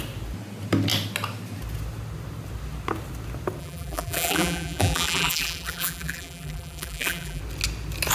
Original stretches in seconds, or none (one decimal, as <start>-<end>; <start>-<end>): 0.0-3.6; 7.4-8.1